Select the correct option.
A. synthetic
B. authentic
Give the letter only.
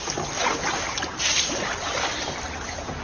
B